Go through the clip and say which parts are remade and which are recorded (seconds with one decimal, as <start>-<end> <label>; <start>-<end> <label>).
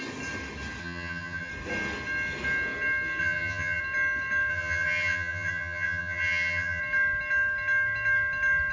0.0-0.8 recorded; 0.8-1.5 remade; 1.5-3.2 recorded; 3.2-3.8 remade; 3.8-4.5 recorded; 4.5-6.8 remade; 6.8-8.7 recorded